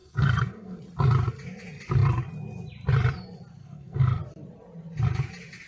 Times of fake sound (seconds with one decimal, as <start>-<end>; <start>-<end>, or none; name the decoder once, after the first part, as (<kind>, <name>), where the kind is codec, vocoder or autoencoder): 0.0-0.8 (codec, SNAC); 3.6-4.2